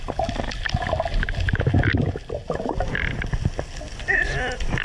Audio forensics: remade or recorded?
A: recorded